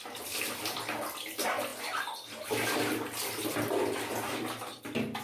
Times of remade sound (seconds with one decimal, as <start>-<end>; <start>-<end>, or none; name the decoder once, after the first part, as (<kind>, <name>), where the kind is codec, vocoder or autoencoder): none